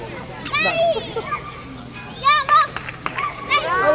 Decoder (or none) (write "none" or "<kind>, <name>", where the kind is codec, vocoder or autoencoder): none